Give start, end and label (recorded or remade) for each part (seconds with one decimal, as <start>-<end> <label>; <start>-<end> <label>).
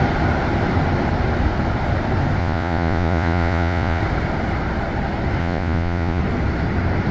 0.0-2.4 recorded; 2.4-4.0 remade; 4.0-5.4 recorded; 5.4-6.2 remade; 6.2-7.1 recorded